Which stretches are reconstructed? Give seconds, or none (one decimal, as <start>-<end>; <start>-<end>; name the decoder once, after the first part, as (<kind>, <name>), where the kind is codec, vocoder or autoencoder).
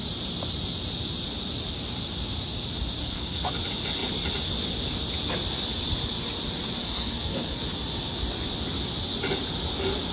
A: 3.0-3.5 (codec, SNAC); 6.8-7.6